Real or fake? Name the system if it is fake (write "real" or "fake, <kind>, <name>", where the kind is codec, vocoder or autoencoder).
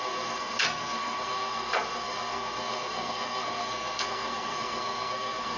fake, codec, SNAC